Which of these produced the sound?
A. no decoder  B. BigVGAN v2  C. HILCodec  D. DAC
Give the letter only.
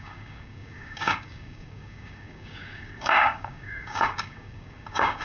D